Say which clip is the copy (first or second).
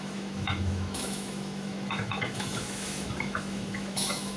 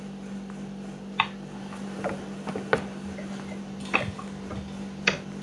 first